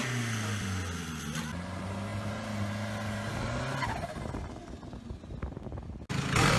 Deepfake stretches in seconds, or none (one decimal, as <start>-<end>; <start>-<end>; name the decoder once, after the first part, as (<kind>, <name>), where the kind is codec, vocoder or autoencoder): none